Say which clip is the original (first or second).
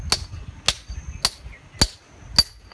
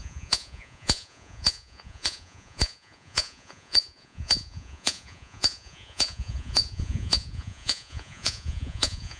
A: first